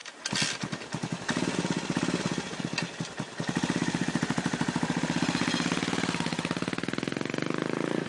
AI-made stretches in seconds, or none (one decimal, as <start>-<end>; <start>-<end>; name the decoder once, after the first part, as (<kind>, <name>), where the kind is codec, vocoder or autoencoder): none